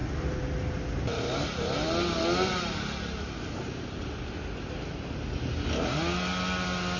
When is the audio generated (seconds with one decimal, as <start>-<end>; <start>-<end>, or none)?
none